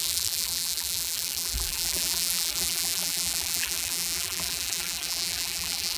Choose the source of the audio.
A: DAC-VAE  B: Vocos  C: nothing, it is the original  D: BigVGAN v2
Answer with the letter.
D